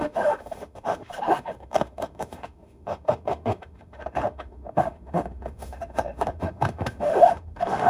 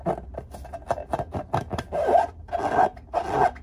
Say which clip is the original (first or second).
second